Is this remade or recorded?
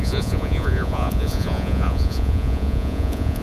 remade